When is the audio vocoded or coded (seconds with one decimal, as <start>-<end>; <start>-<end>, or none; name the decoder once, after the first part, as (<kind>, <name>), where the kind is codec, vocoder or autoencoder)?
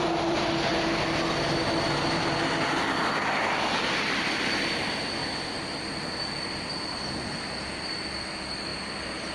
none